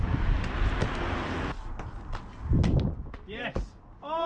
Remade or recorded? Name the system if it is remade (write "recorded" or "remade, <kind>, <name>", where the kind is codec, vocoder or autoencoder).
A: recorded